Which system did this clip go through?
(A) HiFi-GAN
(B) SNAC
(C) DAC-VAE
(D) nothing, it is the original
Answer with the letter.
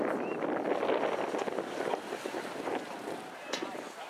D